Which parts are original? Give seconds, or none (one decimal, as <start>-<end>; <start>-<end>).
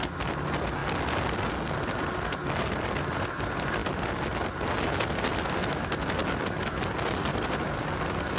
0.0-8.4